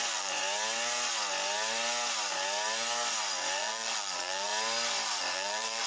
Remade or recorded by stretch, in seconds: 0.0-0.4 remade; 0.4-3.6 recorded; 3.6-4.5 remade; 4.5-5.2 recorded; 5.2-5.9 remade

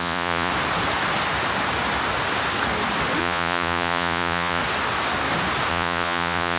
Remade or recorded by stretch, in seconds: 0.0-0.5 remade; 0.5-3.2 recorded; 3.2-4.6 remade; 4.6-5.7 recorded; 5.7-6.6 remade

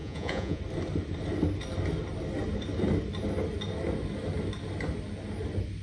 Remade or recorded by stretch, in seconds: 0.0-0.6 remade; 0.6-5.8 recorded